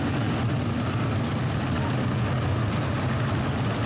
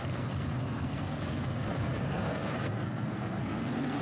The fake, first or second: second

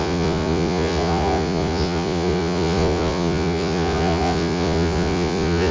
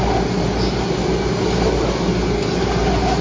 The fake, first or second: first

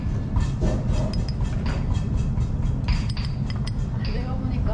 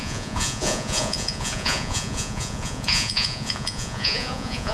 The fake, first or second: second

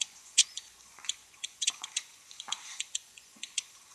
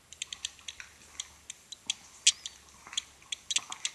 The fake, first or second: first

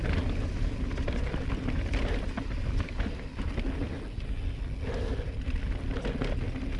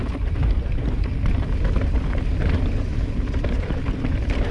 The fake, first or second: second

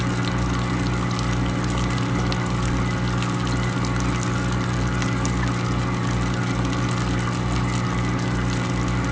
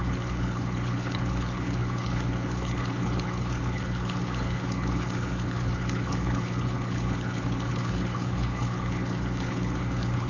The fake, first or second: second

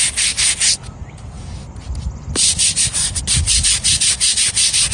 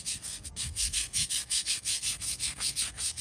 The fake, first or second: second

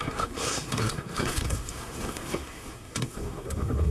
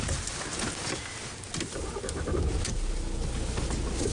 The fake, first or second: first